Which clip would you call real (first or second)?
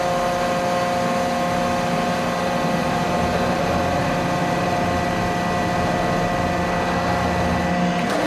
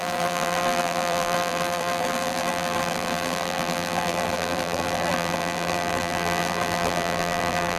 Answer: first